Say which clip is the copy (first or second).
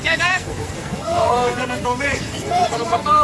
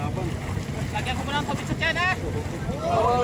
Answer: first